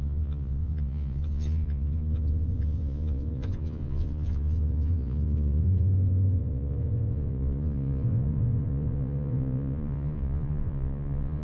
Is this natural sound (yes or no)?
no